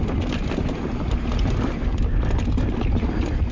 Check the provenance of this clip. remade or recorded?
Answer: recorded